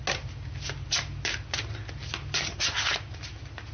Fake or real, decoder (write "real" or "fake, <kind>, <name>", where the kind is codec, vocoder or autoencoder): real